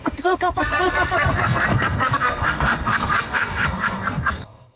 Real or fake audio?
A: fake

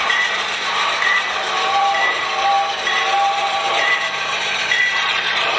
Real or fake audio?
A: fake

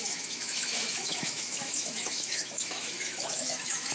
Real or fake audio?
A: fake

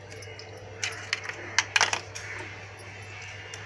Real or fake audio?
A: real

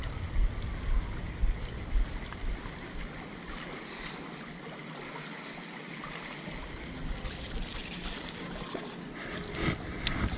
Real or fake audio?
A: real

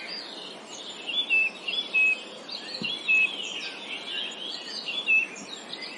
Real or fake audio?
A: real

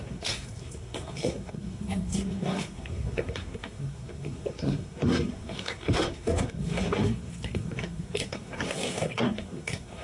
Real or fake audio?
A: fake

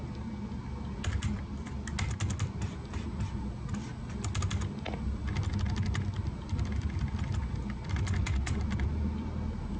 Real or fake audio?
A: real